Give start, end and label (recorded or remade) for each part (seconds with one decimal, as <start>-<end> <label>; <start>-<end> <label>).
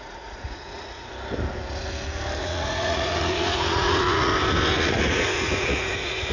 0.0-1.1 remade; 1.1-2.4 recorded; 2.4-4.3 remade; 4.3-4.8 recorded; 4.8-6.3 remade